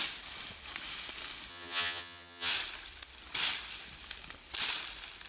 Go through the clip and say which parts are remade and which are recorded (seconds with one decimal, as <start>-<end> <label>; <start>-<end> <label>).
0.0-1.5 recorded; 1.5-2.5 remade; 2.5-5.3 recorded